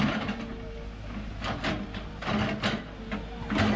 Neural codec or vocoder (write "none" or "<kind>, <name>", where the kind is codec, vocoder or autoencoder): none